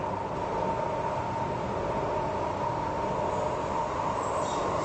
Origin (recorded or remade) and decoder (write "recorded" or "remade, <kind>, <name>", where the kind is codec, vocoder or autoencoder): recorded